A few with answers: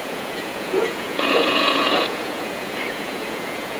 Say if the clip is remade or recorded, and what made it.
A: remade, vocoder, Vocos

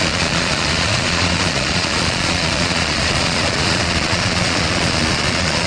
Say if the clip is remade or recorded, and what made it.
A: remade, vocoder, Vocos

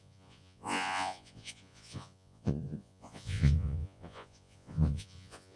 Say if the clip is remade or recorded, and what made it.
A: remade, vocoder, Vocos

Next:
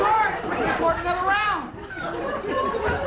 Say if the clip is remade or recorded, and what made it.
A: recorded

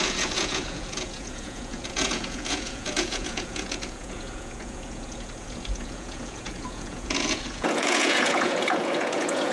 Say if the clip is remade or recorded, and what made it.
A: remade, vocoder, Vocos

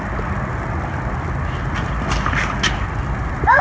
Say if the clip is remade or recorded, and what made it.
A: recorded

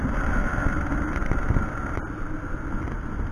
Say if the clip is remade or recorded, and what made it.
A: recorded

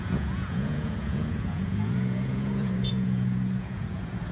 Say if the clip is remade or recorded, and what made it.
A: remade, vocoder, Vocos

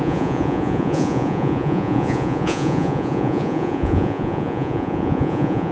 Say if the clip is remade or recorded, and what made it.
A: remade, vocoder, Vocos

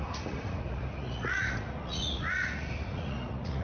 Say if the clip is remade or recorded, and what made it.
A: remade, vocoder, Vocos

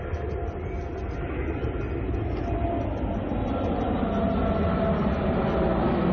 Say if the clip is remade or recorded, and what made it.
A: recorded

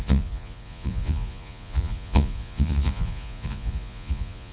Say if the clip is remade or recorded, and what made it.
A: remade, vocoder, Vocos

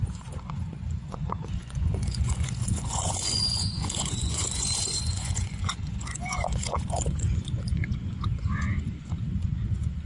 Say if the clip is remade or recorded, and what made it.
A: remade, vocoder, Vocos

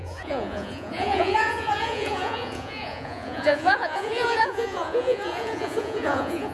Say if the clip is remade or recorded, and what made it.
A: remade, vocoder, Vocos